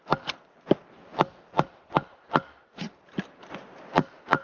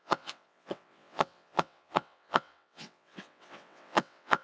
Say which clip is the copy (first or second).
second